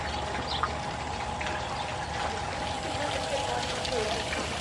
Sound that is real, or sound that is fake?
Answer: real